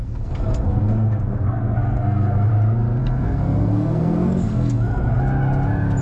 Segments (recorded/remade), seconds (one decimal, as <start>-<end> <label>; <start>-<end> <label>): 0.0-2.5 remade; 2.5-3.0 recorded; 3.0-5.2 remade; 5.2-6.0 recorded